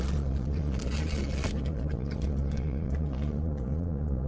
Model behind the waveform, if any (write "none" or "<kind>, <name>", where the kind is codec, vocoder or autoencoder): vocoder, Vocos